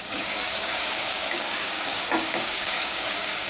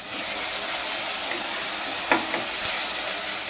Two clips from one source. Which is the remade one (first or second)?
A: first